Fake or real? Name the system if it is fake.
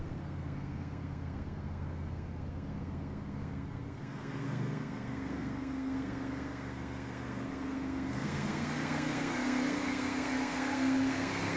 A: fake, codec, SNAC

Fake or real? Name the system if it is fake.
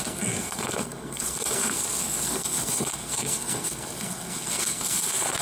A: fake, codec, SNAC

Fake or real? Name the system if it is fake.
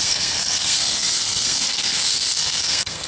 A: fake, codec, SNAC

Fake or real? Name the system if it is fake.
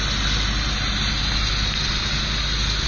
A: real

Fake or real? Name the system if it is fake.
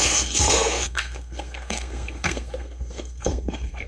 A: fake, codec, SNAC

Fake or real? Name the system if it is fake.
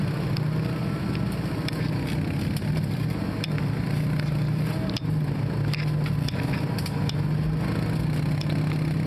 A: real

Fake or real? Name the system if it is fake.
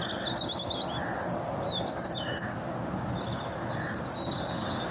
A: real